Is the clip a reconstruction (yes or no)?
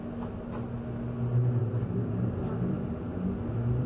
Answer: no